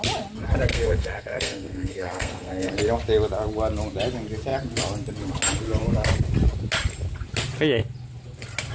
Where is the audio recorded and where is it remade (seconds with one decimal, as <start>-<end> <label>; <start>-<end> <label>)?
0.0-0.7 recorded; 0.7-2.7 remade; 2.7-8.7 recorded